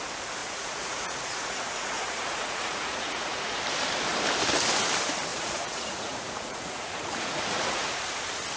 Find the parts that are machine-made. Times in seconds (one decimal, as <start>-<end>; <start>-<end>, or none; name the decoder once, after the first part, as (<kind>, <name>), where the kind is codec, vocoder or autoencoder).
0.4-3.6 (vocoder, Vocos); 5.3-8.0